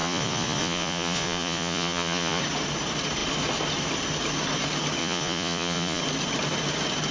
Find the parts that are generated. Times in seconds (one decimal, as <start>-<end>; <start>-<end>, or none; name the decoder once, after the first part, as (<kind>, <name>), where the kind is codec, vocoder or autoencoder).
0.0-2.4 (vocoder, Vocos); 5.0-6.0